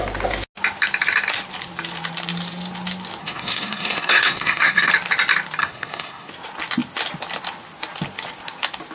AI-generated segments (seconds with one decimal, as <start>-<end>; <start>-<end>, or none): 3.2-4.9; 5.6-6.3